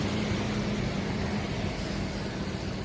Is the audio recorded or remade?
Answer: recorded